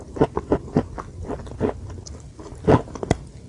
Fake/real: real